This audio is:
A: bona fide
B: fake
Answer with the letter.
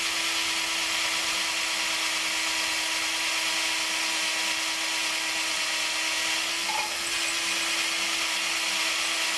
A